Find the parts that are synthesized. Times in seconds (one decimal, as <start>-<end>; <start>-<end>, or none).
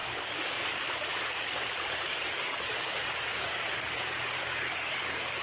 0.0-0.6; 2.1-5.4